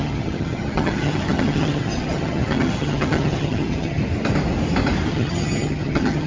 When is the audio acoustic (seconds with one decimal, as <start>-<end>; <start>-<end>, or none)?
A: 4.0-5.1